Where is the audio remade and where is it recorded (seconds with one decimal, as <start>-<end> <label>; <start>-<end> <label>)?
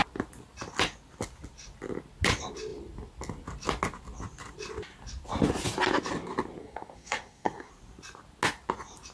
0.0-6.6 recorded; 6.6-7.7 remade; 7.7-9.1 recorded